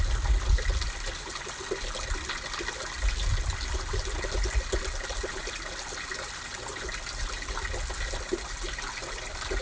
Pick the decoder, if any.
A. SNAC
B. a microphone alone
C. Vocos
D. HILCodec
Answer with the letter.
B